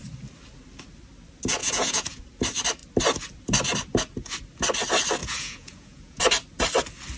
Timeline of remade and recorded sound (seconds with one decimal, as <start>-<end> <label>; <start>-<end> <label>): 0.0-1.6 recorded; 1.6-2.2 remade; 2.2-5.2 recorded; 5.2-6.2 remade; 6.2-7.2 recorded